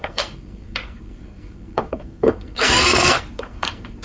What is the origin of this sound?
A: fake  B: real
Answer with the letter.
A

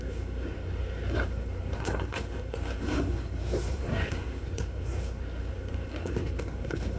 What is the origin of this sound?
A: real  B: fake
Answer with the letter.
B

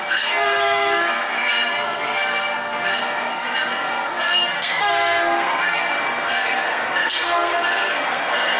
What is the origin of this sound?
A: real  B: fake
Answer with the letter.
B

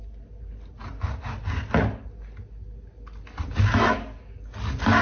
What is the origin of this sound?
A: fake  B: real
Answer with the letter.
B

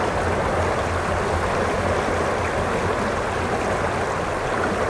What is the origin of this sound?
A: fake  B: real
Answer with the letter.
B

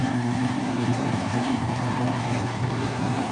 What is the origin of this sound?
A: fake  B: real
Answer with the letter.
A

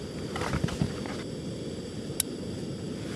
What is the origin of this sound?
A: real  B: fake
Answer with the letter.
A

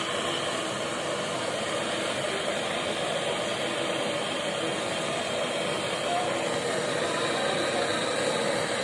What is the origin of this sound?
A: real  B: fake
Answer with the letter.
A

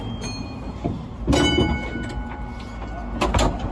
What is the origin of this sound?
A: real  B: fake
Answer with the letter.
A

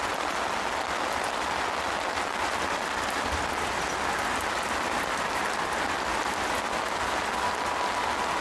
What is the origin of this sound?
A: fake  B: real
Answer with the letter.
B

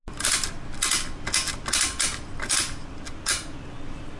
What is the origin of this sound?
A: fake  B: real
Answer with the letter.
B